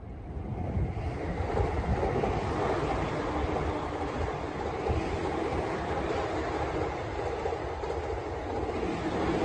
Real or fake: real